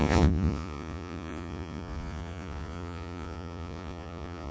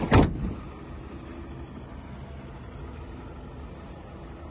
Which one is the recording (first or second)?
second